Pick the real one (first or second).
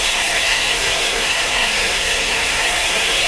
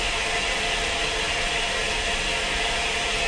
second